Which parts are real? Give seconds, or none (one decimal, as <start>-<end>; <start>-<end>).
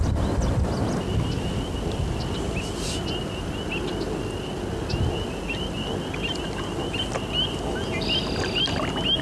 0.0-9.2